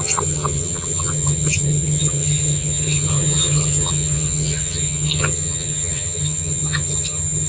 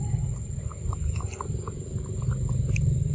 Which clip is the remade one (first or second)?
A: first